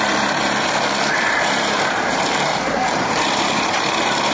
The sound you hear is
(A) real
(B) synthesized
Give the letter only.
B